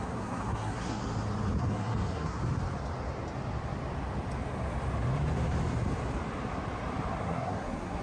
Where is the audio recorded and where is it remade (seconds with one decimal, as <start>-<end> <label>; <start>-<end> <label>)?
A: 0.0-1.0 remade; 1.0-1.6 recorded; 1.6-2.4 remade; 2.4-7.2 recorded; 7.2-8.0 remade

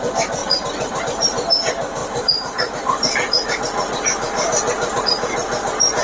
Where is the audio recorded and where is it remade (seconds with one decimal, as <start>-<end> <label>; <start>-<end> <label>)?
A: 0.0-0.4 recorded; 0.4-1.0 remade; 1.0-2.0 recorded; 2.0-5.0 remade; 5.0-6.0 recorded

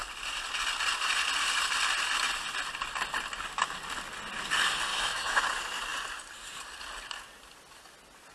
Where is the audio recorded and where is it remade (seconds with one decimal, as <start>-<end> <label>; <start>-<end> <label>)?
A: 0.0-4.9 recorded; 4.9-5.4 remade; 5.4-8.3 recorded

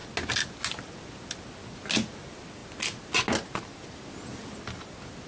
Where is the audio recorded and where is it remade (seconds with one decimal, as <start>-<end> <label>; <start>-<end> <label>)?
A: 0.0-5.3 recorded

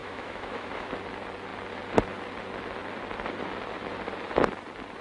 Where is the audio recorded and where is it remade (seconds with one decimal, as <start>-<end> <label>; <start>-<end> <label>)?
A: 0.0-0.9 remade; 0.9-5.0 recorded

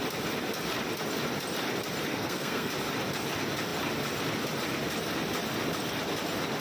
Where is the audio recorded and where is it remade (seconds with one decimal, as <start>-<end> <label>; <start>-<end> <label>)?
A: 0.0-2.1 recorded; 2.1-2.7 remade; 2.7-6.6 recorded